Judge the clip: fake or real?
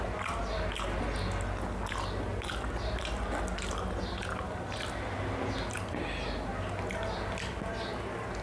real